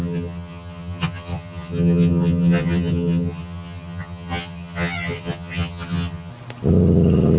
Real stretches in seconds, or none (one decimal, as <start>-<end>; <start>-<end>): 6.3-7.4